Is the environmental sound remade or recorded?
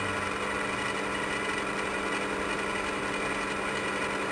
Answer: recorded